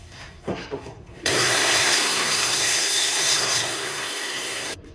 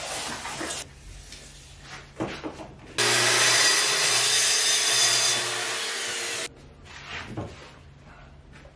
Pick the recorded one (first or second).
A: second